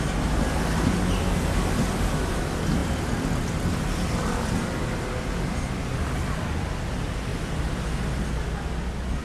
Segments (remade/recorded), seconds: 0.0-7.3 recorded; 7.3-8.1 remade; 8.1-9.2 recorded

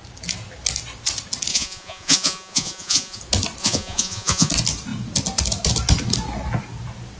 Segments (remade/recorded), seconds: 0.0-1.5 recorded; 1.5-3.2 remade; 3.2-3.6 recorded; 3.6-4.5 remade; 4.5-7.2 recorded

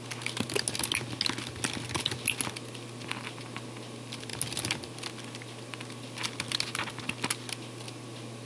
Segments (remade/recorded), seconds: 0.0-8.5 recorded

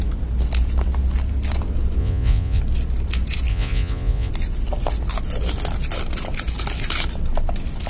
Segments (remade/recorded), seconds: 0.0-2.0 recorded; 2.0-2.6 remade; 2.6-3.5 recorded; 3.5-4.3 remade; 4.3-7.9 recorded

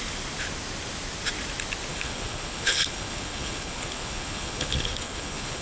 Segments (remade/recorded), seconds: 0.0-1.9 recorded; 1.9-5.6 remade